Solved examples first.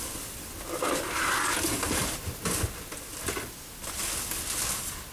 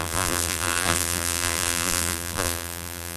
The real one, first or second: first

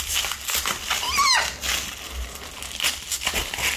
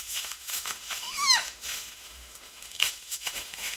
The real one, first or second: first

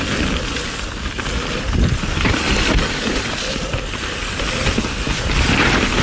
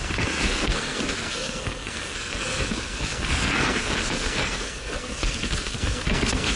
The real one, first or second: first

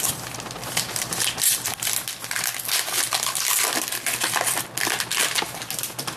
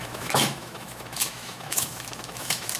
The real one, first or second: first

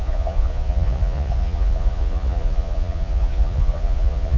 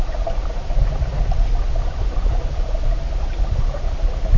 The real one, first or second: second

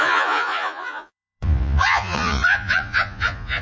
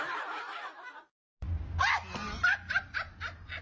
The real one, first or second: second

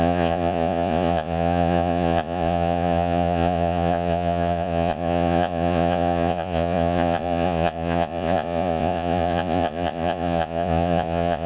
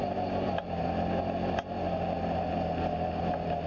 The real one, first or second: second